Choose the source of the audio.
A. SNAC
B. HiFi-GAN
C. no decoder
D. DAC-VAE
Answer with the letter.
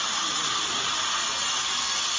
C